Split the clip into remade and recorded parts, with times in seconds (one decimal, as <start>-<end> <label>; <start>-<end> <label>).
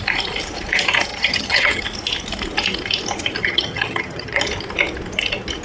0.0-1.1 recorded; 1.1-1.8 remade; 1.8-3.4 recorded; 3.4-4.4 remade; 4.4-5.6 recorded